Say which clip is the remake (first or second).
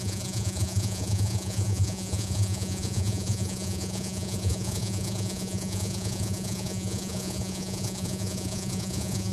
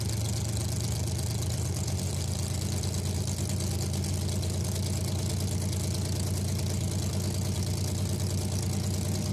first